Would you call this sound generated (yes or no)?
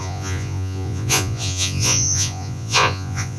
yes